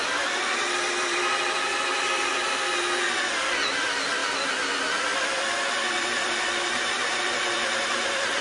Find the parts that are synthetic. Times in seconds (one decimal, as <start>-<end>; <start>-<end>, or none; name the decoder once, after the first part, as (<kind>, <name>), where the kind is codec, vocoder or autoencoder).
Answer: 0.0-8.4 (vocoder, BigVGAN v2)